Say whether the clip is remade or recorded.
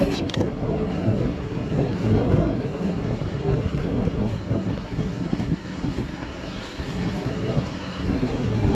remade